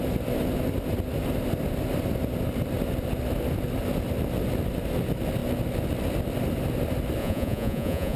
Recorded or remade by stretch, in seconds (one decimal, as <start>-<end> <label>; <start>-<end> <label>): 0.0-7.2 recorded; 7.2-8.2 remade